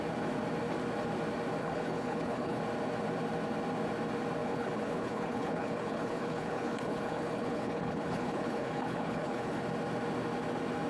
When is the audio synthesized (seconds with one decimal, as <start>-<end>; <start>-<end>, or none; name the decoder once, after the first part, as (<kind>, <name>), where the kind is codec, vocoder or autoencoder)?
1.6-2.6 (codec, HILCodec); 4.4-9.6